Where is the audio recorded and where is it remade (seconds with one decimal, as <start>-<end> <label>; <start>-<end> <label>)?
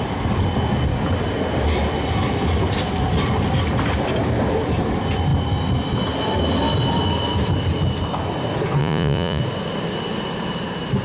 0.0-8.8 recorded; 8.8-9.4 remade; 9.4-11.0 recorded